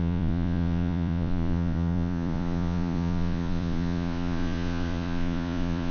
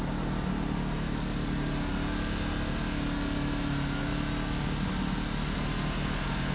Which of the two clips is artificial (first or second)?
first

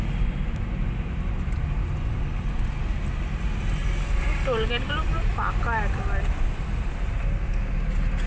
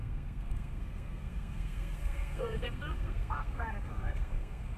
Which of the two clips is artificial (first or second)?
second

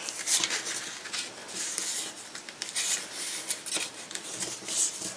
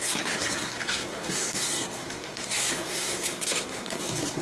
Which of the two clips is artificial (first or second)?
second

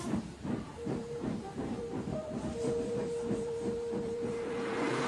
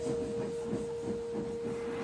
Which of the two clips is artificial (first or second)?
first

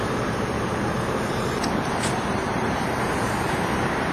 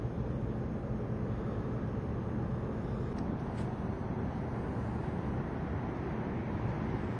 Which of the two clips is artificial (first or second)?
first